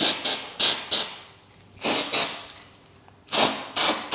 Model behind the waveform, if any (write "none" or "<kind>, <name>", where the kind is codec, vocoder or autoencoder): none